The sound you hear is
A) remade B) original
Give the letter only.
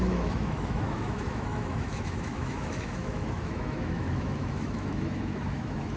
A